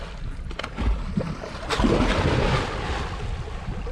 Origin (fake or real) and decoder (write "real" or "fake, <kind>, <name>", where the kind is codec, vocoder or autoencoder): real